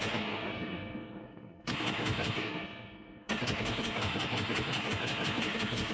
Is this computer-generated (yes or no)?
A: yes